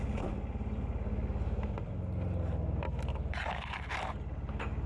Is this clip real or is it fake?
real